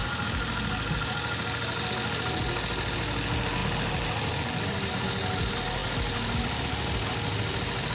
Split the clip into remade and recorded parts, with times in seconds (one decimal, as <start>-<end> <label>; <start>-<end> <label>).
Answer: 0.0-7.9 recorded